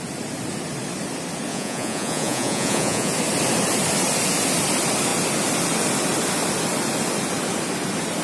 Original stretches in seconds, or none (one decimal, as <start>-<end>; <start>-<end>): 0.0-1.5; 3.1-8.2